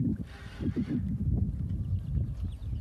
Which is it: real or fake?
real